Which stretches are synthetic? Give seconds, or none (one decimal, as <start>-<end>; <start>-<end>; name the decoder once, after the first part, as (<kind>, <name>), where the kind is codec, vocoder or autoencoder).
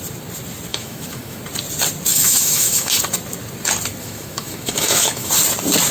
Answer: 0.7-1.4 (autoencoder, DAC-VAE); 2.1-3.0; 4.0-5.3